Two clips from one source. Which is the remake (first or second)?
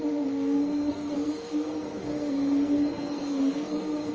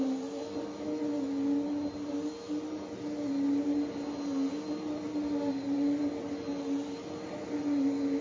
first